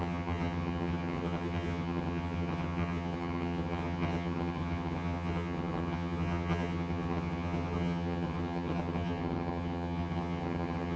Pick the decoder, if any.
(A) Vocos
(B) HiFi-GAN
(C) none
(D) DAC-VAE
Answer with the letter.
B